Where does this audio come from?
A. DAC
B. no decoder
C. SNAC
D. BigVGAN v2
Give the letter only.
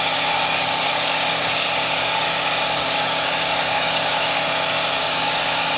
A